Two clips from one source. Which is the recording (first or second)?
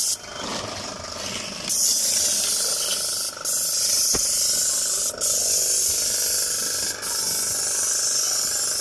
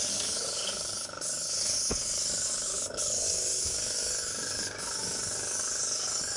first